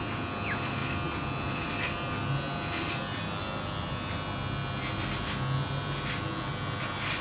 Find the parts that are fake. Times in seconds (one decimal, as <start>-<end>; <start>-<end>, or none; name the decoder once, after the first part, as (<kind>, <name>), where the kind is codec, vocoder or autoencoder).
none